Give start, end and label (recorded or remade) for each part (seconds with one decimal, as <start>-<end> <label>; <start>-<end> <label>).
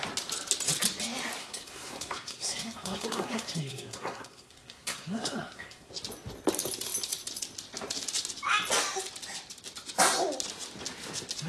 0.0-1.4 recorded; 1.4-5.9 remade; 5.9-11.5 recorded